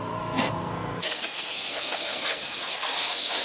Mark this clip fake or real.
fake